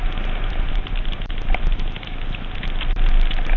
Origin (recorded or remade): recorded